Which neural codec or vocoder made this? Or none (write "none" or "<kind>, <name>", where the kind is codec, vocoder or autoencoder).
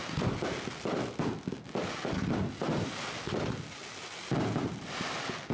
vocoder, BigVGAN v2